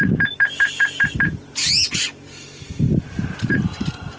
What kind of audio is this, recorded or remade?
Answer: recorded